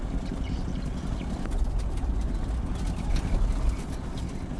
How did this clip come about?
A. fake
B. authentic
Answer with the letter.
B